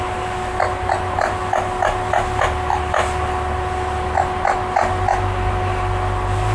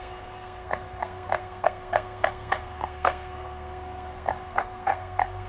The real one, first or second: first